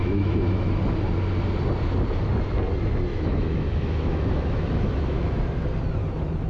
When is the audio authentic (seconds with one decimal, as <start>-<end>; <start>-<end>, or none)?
0.8-3.1; 5.4-6.5